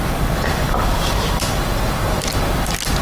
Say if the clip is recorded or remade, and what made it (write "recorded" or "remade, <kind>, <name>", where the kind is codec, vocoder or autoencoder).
recorded